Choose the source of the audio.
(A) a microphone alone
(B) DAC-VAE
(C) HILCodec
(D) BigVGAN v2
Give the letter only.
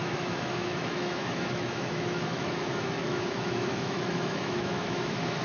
B